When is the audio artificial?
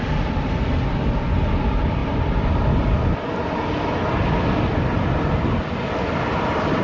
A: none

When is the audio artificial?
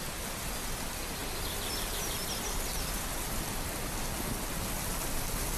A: none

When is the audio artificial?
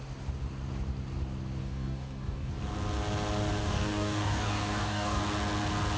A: 1.6-2.5 (codec, DAC); 3.6-5.2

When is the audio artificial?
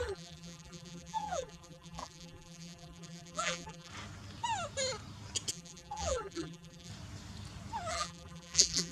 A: 0.0-3.9 (vocoder, BigVGAN v2); 5.5-6.9; 7.9-8.9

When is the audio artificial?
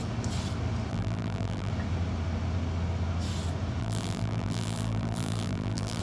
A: 0.9-1.7 (vocoder, BigVGAN v2); 3.8-6.0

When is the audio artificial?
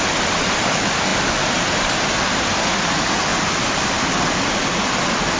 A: none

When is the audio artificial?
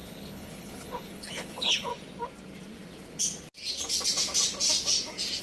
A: 0.0-1.9 (codec, HILCodec)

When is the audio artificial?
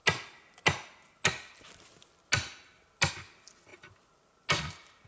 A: none